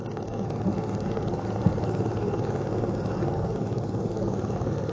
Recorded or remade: remade